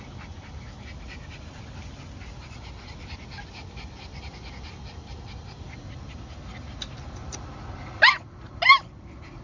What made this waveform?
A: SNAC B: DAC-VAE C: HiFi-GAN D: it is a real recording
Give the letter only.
D